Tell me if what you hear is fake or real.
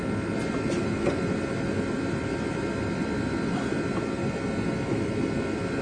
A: real